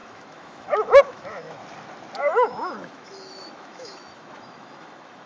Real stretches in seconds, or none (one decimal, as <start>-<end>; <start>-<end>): 1.6-2.2